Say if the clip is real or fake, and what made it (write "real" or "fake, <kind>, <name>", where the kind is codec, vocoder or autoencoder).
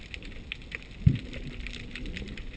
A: real